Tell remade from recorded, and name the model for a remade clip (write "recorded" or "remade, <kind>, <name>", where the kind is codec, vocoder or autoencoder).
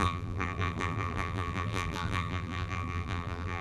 remade, vocoder, BigVGAN v2